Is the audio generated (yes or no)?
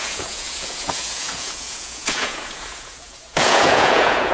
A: yes